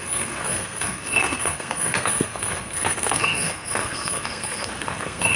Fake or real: fake